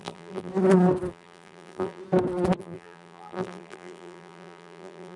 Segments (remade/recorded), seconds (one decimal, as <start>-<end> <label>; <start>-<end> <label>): 0.0-0.5 remade; 0.5-1.1 recorded; 1.1-2.0 remade; 2.0-2.6 recorded; 2.6-5.2 remade